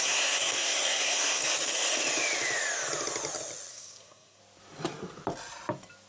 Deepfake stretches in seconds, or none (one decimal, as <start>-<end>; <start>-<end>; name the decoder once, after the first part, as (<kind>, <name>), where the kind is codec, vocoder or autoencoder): 0.0-1.4 (codec, SNAC); 3.7-4.4